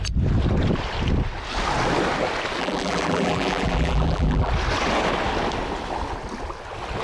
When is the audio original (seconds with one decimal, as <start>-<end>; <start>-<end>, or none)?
0.0-2.6; 4.5-7.0